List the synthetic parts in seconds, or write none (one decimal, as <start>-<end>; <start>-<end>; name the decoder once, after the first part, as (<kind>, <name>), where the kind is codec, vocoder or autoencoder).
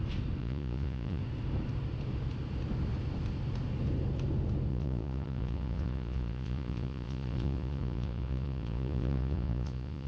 0.4-1.2 (vocoder, Vocos); 4.7-10.1